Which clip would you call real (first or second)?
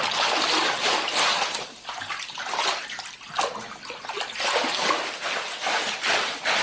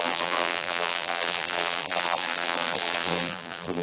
first